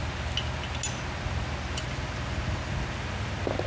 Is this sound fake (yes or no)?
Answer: no